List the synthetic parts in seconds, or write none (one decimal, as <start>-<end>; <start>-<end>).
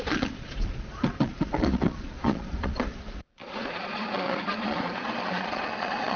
0.0-6.2